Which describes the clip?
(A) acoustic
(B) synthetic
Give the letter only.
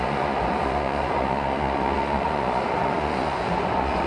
B